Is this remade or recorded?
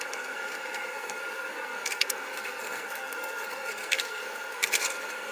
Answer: remade